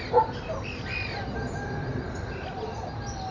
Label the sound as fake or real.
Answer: real